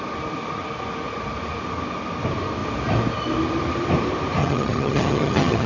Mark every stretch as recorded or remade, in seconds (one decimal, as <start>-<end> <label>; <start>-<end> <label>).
0.0-4.4 recorded; 4.4-5.7 remade